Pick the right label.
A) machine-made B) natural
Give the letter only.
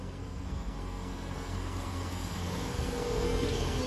A